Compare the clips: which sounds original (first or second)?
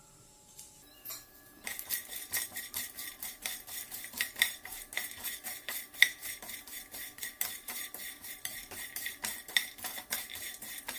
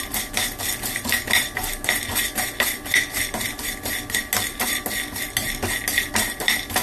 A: second